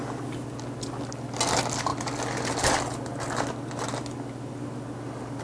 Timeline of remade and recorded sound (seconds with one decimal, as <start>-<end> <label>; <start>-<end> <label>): 0.0-5.4 recorded